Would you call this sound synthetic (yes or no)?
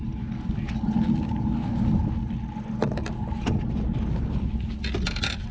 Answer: no